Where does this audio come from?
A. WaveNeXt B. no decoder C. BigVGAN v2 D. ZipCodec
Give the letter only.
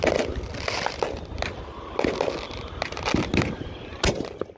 B